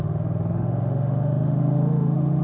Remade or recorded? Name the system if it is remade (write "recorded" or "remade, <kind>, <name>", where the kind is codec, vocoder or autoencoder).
remade, autoencoder, DAC-VAE